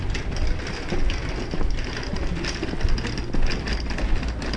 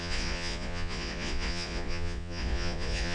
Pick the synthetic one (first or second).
second